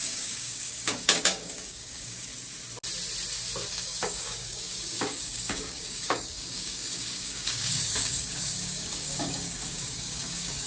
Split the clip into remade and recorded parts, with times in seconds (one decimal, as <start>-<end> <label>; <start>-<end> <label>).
0.0-2.3 remade; 2.3-3.7 recorded; 3.7-10.7 remade